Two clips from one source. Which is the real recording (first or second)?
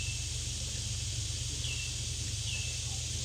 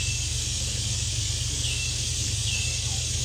first